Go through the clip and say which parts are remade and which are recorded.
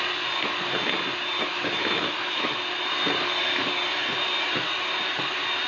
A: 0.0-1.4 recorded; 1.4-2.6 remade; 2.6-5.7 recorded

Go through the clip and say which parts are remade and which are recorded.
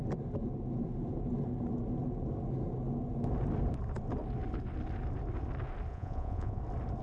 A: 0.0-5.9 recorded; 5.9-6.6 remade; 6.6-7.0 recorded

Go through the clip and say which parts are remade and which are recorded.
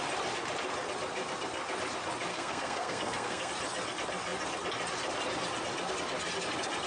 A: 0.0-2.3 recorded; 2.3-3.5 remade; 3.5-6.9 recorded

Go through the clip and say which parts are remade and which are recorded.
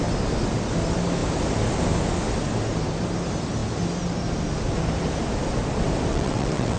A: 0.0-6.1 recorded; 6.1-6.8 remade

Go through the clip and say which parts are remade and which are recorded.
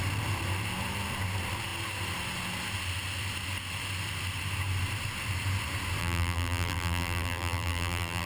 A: 0.0-6.0 recorded; 6.0-8.3 remade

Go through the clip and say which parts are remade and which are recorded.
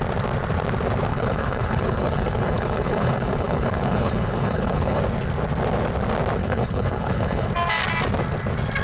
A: 0.0-1.1 recorded; 1.1-5.0 remade; 5.0-6.4 recorded; 6.4-7.5 remade; 7.5-8.8 recorded